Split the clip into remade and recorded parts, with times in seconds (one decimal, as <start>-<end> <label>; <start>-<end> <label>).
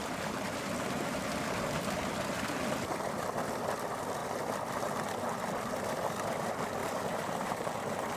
0.0-6.8 recorded; 6.8-8.2 remade